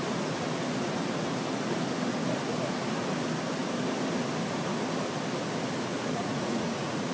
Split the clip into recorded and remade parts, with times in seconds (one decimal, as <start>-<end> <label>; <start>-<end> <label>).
0.0-5.9 recorded; 5.9-7.1 remade